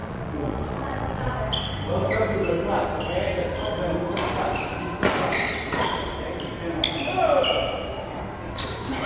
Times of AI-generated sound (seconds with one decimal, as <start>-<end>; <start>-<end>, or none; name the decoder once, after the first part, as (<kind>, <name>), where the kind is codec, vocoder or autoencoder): 0.0-1.3 (vocoder, Vocos)